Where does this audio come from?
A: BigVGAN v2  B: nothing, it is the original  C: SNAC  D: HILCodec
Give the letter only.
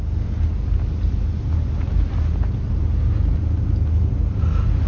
B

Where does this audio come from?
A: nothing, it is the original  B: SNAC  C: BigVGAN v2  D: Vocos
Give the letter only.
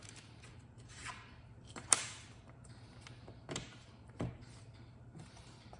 C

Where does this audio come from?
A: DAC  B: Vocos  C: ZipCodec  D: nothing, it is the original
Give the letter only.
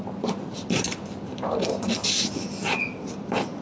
D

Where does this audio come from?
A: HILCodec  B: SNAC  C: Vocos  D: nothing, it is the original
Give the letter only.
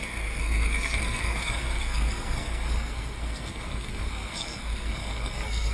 B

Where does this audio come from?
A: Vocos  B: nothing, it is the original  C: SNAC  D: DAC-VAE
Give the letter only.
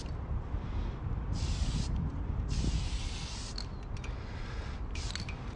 B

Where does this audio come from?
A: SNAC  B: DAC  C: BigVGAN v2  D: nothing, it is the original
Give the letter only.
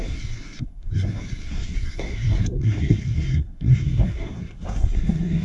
A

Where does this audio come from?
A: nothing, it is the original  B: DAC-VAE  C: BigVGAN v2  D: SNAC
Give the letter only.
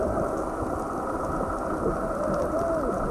A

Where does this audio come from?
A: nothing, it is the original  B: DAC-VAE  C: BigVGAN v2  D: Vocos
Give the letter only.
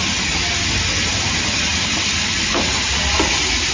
A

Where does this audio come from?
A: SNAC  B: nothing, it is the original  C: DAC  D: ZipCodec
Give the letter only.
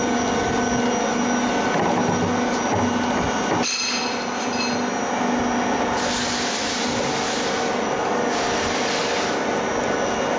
B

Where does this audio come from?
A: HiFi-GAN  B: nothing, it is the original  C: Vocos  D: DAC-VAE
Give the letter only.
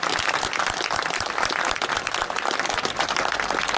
B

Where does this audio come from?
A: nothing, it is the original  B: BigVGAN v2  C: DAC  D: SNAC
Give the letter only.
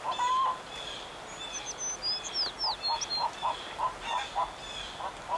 A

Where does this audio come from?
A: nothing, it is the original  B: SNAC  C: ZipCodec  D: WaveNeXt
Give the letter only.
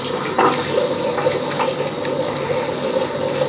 A